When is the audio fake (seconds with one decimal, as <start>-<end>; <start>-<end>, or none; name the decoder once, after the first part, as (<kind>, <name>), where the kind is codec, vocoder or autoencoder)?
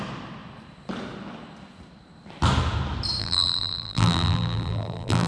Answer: 3.2-5.3 (vocoder, BigVGAN v2)